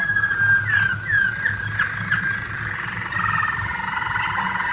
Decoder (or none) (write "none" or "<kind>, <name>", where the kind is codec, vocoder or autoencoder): none